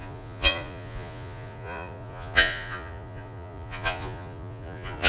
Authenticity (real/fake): fake